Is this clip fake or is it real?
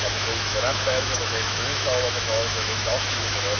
fake